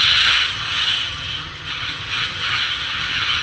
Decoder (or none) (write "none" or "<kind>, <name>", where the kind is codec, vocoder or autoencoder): vocoder, HiFi-GAN